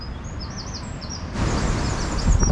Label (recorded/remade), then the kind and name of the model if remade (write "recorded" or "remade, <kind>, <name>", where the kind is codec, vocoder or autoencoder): recorded